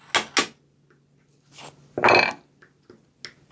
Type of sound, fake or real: real